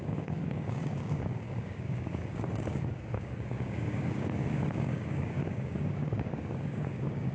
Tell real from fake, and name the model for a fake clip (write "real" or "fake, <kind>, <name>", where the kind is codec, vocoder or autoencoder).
fake, codec, DAC